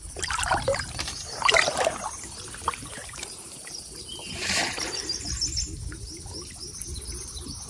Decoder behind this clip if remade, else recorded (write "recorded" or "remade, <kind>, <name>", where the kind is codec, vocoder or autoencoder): remade, vocoder, BigVGAN v2